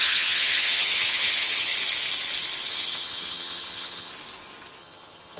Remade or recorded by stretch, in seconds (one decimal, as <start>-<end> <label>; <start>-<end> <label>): 0.0-1.7 remade; 1.7-2.7 recorded; 2.7-4.1 remade; 4.1-4.8 recorded; 4.8-5.4 remade